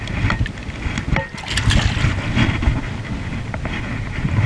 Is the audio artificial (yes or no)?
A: no